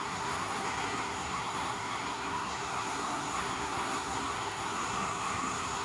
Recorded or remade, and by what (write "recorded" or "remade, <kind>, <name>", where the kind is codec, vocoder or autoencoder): remade, codec, SNAC